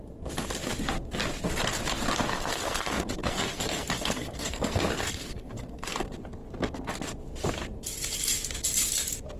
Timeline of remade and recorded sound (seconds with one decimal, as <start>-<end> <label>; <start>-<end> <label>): 0.0-2.3 recorded; 2.3-6.0 remade; 6.0-9.4 recorded